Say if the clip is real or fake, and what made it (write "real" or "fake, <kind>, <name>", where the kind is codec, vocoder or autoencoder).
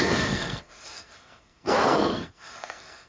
fake, codec, SNAC